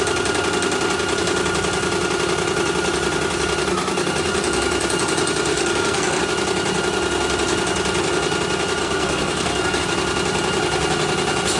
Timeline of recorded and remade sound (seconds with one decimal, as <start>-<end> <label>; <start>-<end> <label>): 0.0-5.5 recorded; 5.5-6.2 remade; 6.2-8.8 recorded; 8.8-9.8 remade; 9.8-11.6 recorded